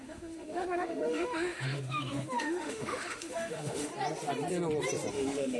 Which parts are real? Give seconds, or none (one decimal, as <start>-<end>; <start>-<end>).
3.9-5.1